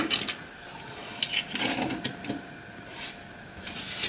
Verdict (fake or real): real